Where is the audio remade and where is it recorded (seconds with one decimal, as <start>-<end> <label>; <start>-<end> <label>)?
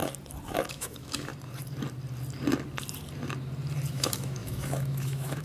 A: 0.0-0.7 recorded; 0.7-1.3 remade; 1.3-3.9 recorded; 3.9-5.4 remade